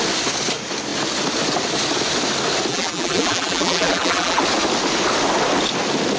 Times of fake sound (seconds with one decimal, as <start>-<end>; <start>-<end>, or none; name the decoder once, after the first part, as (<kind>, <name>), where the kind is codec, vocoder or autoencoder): 2.7-4.4 (vocoder, BigVGAN v2)